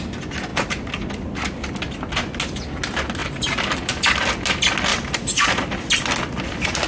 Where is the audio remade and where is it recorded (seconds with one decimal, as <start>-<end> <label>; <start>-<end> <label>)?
0.0-3.2 recorded; 3.2-3.9 remade; 3.9-4.9 recorded; 4.9-5.7 remade; 5.7-6.9 recorded